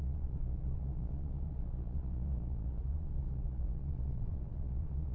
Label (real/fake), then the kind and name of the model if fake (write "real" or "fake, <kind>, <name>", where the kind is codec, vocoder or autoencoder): fake, vocoder, Vocos